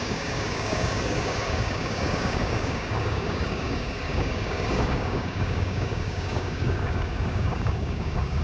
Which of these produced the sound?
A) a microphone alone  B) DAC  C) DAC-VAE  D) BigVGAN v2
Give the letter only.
B